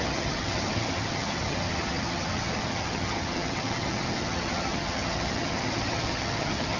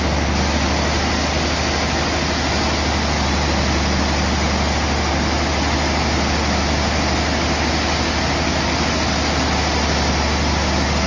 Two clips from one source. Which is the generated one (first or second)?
first